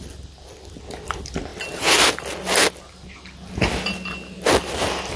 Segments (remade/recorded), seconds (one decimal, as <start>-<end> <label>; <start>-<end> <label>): 0.0-5.2 recorded